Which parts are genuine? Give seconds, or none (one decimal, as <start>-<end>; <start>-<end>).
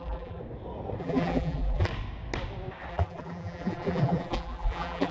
0.4-1.0; 1.9-2.9